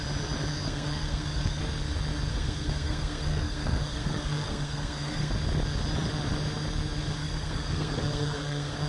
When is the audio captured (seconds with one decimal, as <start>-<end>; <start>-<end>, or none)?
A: 0.0-0.5; 1.6-2.3; 5.3-7.2